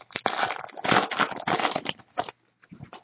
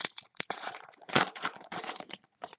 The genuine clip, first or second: first